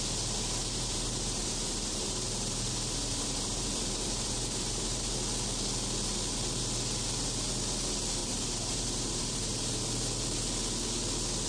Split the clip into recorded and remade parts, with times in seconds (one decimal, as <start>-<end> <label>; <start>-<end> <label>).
0.0-0.6 recorded; 0.6-5.1 remade; 5.1-8.2 recorded; 8.2-9.9 remade; 9.9-11.5 recorded